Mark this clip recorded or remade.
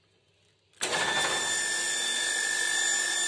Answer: recorded